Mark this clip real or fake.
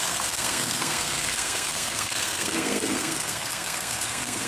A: fake